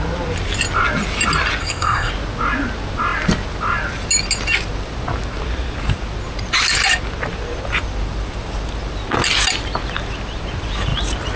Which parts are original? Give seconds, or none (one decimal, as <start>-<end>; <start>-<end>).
0.0-1.6; 2.1-11.4